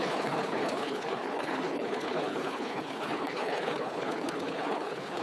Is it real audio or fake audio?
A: fake